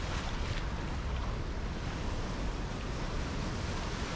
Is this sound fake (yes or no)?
no